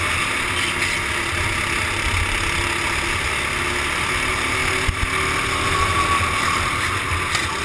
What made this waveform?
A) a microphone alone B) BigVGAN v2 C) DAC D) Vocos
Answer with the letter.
A